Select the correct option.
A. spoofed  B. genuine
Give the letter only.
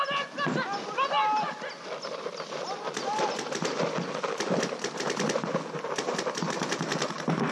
B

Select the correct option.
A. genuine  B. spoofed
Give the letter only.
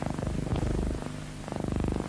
A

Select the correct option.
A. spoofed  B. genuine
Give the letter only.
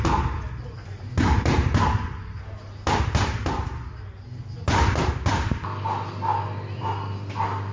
B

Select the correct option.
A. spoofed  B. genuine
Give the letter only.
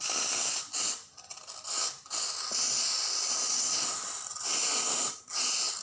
B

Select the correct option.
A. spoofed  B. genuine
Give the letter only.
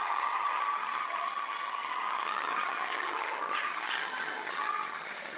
A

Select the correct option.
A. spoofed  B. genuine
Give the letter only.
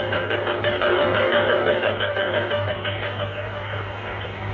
A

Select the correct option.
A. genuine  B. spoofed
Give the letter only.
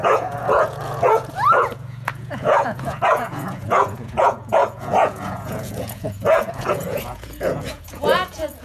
B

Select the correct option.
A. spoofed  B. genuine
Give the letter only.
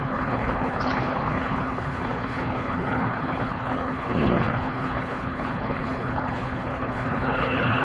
A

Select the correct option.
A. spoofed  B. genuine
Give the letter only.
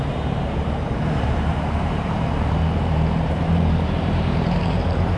A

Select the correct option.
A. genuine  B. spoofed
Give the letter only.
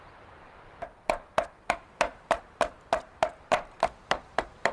B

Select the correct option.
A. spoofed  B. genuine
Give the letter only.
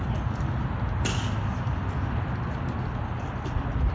B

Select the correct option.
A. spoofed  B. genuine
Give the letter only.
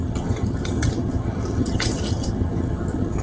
A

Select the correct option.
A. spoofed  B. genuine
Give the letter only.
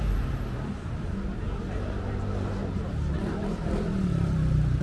A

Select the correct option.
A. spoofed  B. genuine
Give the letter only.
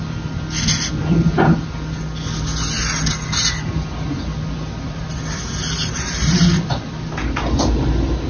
B